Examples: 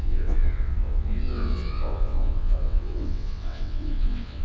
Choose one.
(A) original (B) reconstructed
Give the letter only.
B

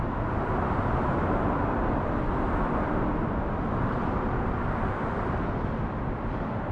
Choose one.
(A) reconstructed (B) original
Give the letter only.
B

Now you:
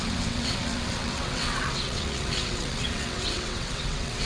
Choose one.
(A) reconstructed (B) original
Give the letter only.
A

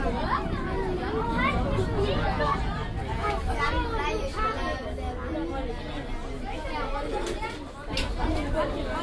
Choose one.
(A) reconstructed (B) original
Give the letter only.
B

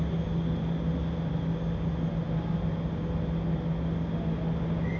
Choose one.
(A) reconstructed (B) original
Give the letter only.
B